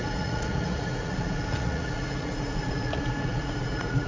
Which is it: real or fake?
fake